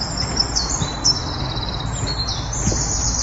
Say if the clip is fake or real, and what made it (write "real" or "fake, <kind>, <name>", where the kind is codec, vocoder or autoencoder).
real